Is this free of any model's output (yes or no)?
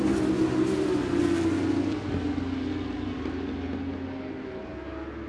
yes